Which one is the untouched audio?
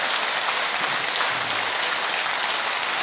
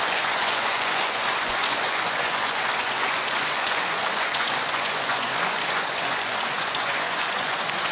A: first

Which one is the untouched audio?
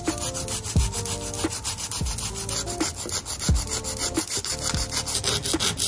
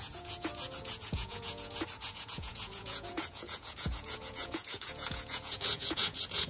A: first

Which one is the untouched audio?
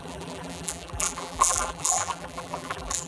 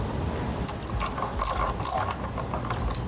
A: second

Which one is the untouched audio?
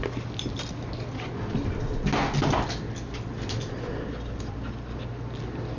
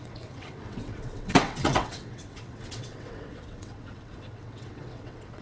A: first